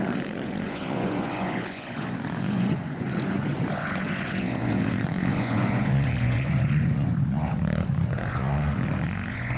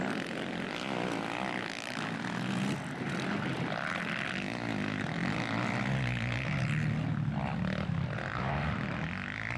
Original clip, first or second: second